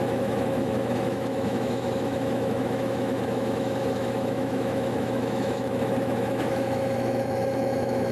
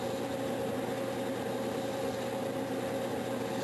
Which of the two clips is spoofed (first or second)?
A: first